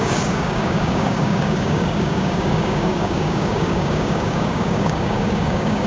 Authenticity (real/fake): fake